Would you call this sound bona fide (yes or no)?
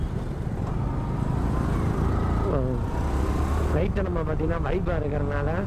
yes